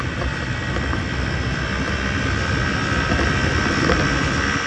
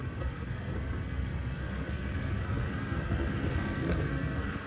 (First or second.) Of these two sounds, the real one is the first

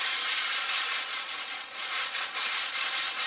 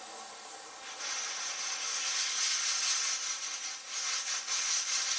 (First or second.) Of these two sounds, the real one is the second